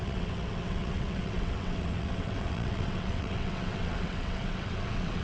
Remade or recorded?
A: remade